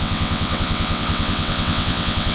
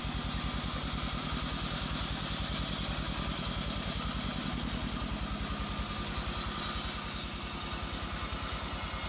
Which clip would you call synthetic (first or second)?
first